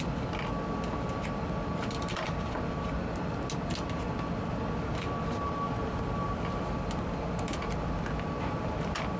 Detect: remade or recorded recorded